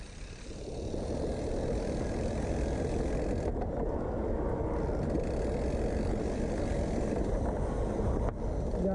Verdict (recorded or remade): recorded